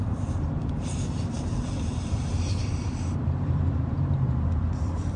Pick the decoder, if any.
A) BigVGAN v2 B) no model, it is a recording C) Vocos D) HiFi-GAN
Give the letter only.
A